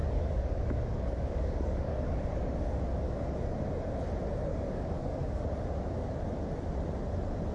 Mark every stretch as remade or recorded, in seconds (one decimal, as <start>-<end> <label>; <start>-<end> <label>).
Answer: 0.0-3.3 remade; 3.3-4.5 recorded; 4.5-5.4 remade; 5.4-7.5 recorded